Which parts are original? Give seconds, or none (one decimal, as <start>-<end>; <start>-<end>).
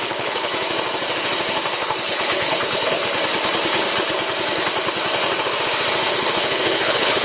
0.5-1.7; 3.0-6.1